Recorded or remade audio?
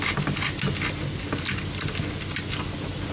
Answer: recorded